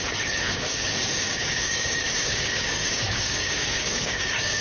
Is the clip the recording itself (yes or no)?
no